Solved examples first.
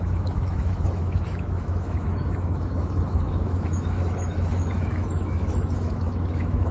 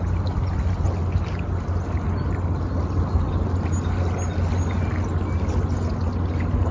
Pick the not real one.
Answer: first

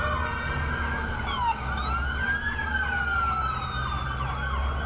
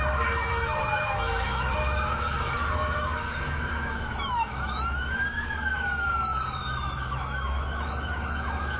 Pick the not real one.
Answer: second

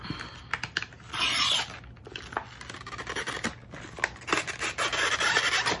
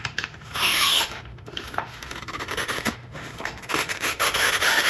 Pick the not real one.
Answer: second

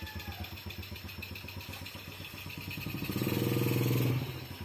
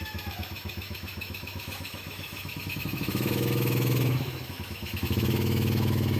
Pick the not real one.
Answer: second